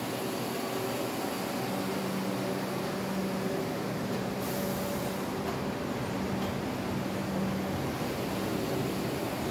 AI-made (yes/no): no